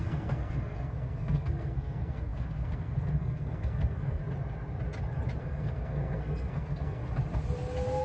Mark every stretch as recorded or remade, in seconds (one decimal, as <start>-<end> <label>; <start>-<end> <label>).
0.0-4.2 remade; 4.2-5.4 recorded; 5.4-7.0 remade; 7.0-8.0 recorded